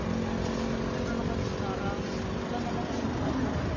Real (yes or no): yes